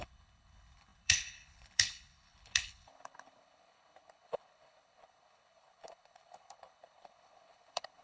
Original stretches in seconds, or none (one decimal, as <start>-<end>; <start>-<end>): none